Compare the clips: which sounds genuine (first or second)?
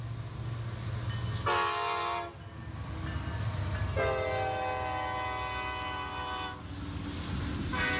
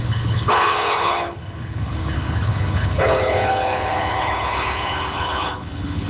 first